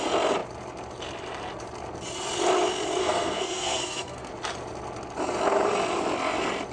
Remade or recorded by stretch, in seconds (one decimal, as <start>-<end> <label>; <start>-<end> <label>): 0.0-3.0 recorded; 3.0-4.3 remade; 4.3-6.7 recorded